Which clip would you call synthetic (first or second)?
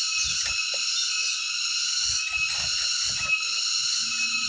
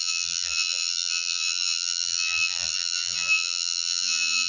second